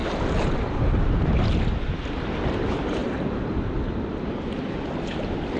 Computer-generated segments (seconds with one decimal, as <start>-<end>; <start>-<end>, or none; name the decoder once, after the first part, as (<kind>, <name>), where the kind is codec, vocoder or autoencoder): 0.0-1.3 (vocoder, BigVGAN v2); 3.0-3.6